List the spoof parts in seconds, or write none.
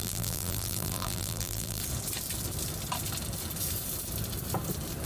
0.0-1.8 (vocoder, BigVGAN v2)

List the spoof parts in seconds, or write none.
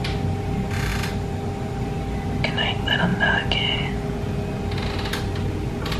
none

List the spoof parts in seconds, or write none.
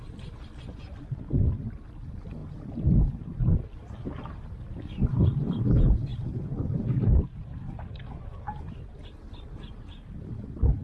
2.4-3.2 (vocoder, BigVGAN v2); 6.1-7.8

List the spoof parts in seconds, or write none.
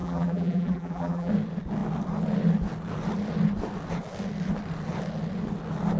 0.0-1.3 (vocoder, BigVGAN v2)